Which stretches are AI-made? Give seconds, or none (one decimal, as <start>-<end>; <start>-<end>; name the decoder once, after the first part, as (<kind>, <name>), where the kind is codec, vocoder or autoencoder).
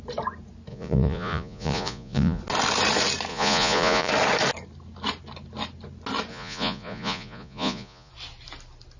0.7-2.4 (vocoder, Vocos); 3.3-4.1; 6.3-8.1